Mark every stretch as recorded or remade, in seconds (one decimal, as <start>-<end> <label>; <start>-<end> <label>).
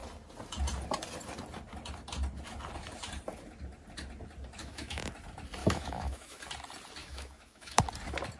0.0-4.6 recorded; 4.6-5.1 remade; 5.1-5.6 recorded; 5.6-6.4 remade; 6.4-7.0 recorded; 7.0-7.8 remade; 7.8-8.4 recorded